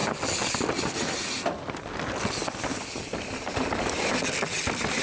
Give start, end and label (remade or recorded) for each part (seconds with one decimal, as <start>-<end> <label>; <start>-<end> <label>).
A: 0.0-5.0 recorded